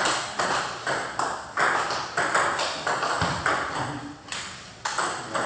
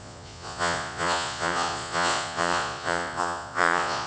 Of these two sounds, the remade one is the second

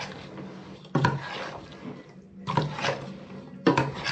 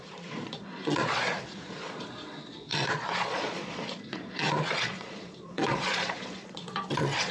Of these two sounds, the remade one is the second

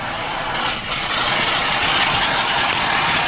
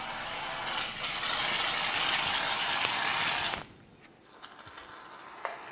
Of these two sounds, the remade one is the first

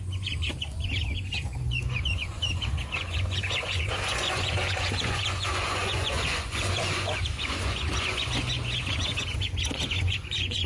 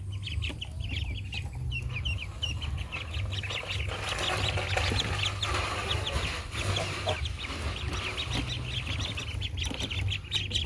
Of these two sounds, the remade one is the first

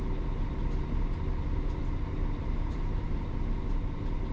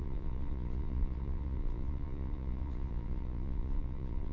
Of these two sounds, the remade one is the second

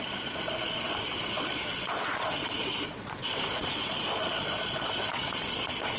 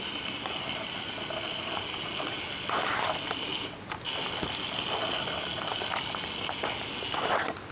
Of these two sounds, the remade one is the first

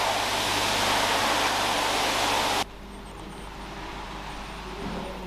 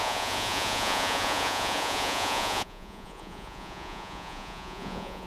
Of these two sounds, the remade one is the second